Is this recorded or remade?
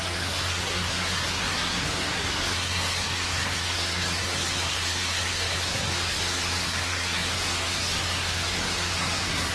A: remade